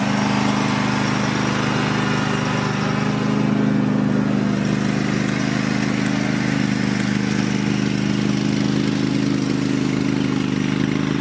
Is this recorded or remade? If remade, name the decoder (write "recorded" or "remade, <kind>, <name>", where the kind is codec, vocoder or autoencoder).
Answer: recorded